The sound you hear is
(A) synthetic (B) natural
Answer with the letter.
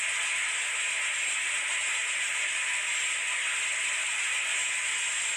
B